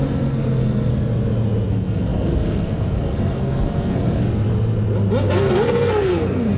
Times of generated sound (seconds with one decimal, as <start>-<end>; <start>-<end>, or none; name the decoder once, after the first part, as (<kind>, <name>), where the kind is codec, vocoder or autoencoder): 0.0-0.9 (codec, SNAC); 1.7-4.2; 5.3-6.6

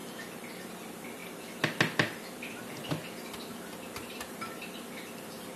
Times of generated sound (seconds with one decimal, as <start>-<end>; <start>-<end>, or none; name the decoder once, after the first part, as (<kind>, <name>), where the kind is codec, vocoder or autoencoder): none

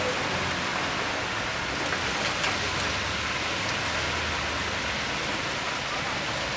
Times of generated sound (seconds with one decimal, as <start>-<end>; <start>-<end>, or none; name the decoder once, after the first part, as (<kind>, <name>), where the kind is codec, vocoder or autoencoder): none

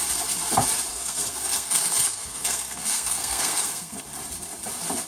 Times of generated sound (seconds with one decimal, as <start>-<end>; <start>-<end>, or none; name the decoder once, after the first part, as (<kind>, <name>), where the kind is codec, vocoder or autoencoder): 0.9-4.0 (codec, SNAC)

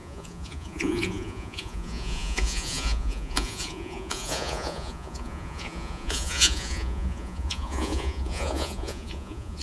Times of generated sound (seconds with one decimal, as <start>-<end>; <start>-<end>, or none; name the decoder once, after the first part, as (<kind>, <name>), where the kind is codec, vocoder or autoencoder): 0.0-9.6 (vocoder, Vocos)

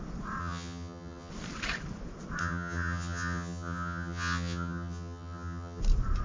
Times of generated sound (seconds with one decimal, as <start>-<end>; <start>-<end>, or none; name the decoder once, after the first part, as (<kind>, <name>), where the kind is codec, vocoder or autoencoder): 0.4-1.3 (vocoder, HiFi-GAN); 2.4-5.8

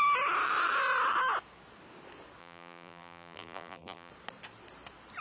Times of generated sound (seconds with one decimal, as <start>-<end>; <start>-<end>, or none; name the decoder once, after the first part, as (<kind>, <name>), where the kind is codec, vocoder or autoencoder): 2.4-4.1 (vocoder, BigVGAN v2)